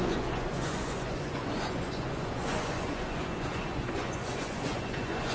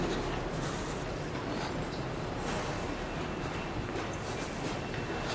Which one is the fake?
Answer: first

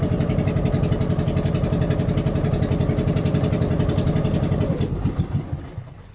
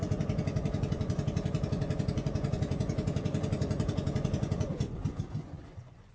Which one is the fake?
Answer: second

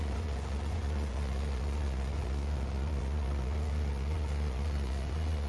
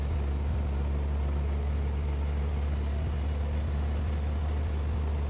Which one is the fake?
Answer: first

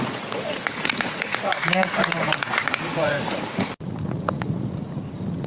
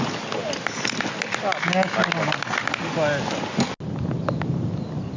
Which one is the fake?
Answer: first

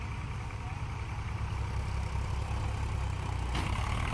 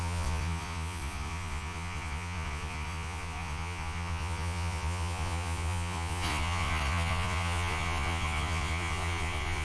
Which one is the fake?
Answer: second